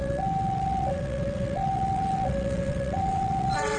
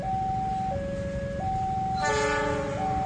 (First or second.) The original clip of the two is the second